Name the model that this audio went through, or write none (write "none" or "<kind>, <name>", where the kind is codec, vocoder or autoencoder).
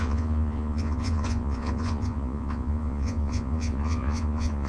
vocoder, Vocos